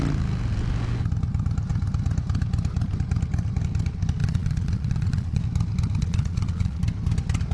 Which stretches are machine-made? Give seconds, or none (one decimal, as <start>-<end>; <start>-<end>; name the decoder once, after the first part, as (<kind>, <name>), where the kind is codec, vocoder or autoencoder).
4.2-5.4 (vocoder, Vocos); 6.0-6.8